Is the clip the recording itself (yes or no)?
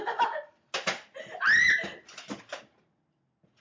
yes